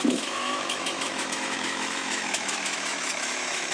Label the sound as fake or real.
fake